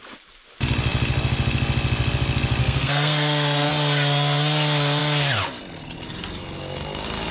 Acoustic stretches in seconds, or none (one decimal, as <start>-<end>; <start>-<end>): 0.0-2.6; 3.7-7.3

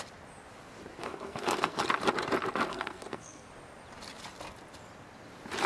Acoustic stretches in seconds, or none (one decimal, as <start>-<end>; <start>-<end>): 0.0-1.0; 1.8-2.7; 3.5-5.7

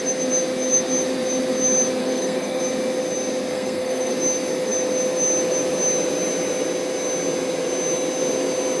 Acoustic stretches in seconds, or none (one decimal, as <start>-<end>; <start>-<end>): 0.0-2.0; 2.6-3.5; 4.1-8.8

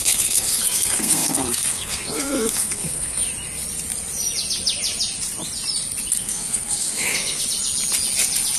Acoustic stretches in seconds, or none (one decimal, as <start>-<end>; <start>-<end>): 3.2-6.2; 7.4-8.6

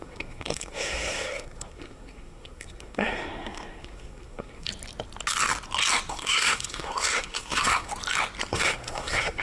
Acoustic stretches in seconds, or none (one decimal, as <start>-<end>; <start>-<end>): 4.7-6.1; 7.9-8.5

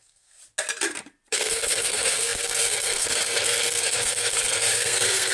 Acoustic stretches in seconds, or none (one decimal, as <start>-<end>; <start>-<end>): 0.4-1.3

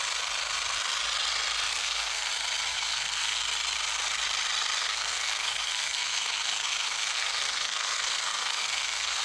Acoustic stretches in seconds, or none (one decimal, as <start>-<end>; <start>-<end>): 0.0-1.7; 2.3-2.7; 3.4-4.8

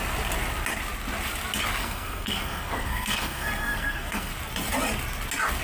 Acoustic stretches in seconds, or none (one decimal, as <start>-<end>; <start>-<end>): 0.0-1.8; 4.3-5.6